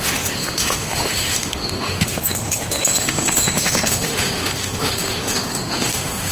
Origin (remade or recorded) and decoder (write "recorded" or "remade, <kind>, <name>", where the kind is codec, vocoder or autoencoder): remade, autoencoder, DAC-VAE